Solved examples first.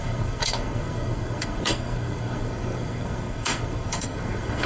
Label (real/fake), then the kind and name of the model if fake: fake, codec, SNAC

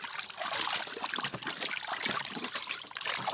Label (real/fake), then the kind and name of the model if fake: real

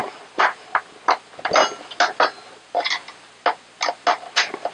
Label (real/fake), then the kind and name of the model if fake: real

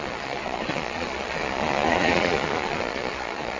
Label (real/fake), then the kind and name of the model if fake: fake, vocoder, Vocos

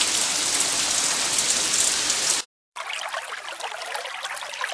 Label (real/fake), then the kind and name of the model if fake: real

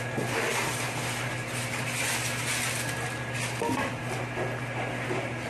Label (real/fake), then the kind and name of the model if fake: real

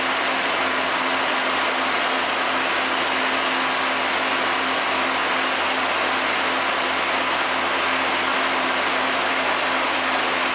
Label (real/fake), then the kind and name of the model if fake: real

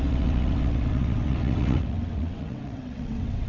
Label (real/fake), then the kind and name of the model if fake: fake, vocoder, WaveNeXt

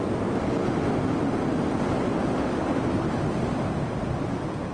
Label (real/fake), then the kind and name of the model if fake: real